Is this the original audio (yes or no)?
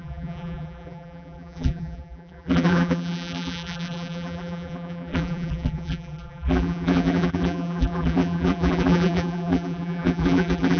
no